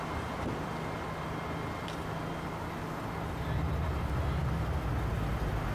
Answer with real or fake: real